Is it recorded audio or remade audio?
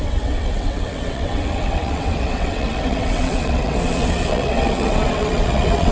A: remade